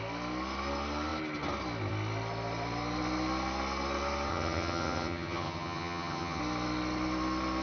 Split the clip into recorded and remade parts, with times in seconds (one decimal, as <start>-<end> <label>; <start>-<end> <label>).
0.0-4.3 recorded; 4.3-6.4 remade; 6.4-7.6 recorded